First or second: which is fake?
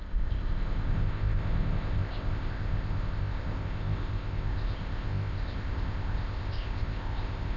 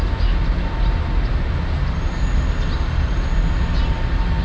first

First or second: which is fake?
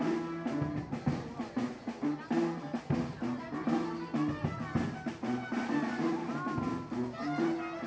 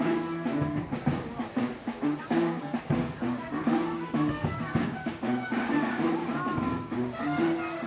second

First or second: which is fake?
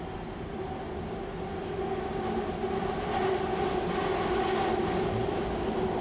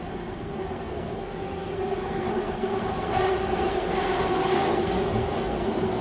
second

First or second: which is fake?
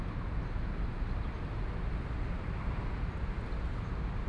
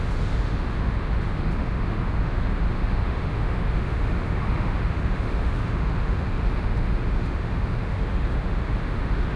second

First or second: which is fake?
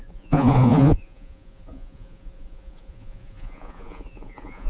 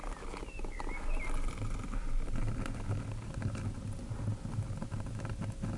first